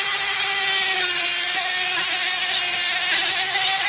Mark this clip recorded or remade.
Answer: recorded